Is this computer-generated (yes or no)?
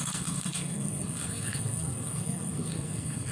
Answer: yes